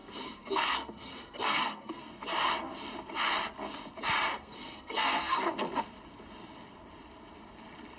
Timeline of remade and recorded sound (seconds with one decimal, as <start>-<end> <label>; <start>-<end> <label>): 0.0-2.1 remade; 2.1-4.3 recorded; 4.3-5.5 remade; 5.5-8.0 recorded